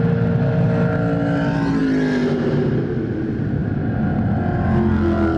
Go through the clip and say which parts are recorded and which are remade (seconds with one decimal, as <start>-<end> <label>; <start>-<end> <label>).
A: 0.0-5.4 recorded